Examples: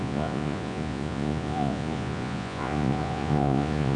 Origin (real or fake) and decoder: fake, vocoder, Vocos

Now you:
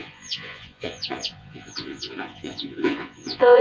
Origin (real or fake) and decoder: fake, vocoder, Vocos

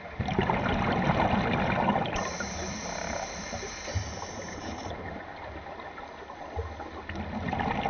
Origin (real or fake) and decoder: real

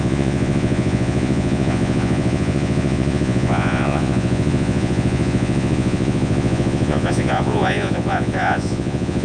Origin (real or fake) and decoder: fake, vocoder, Vocos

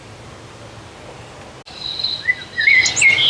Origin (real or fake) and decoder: real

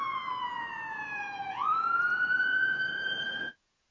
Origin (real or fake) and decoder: fake, vocoder, Vocos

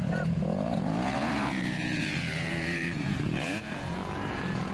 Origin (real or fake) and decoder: fake, vocoder, Vocos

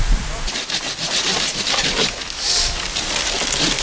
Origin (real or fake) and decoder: real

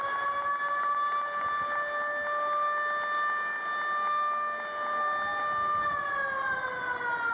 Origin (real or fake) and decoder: real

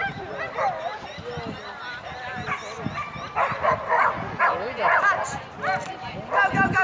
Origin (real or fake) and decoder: real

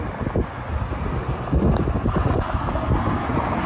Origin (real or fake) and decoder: real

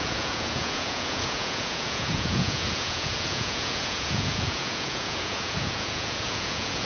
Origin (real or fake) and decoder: fake, vocoder, Vocos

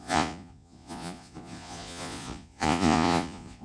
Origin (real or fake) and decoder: fake, vocoder, Vocos